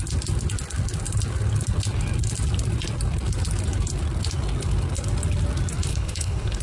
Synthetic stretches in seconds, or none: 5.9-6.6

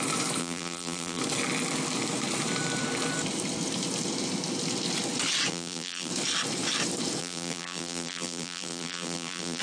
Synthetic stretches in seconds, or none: 0.4-1.2; 5.5-6.1; 7.2-9.6

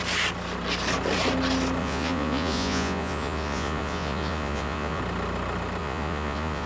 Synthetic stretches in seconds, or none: 1.8-5.0; 5.8-6.7

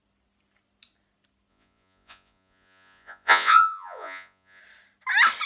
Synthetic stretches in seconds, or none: 1.5-4.6

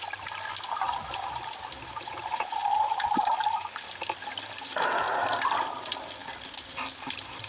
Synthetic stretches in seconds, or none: none

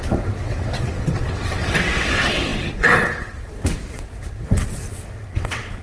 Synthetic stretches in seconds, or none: 0.0-5.8

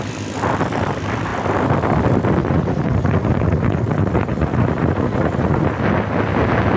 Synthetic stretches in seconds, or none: 2.4-5.7